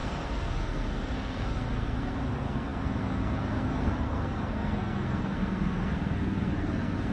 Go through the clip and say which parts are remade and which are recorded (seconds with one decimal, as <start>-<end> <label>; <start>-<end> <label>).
0.0-7.1 remade